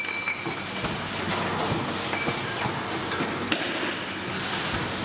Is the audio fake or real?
real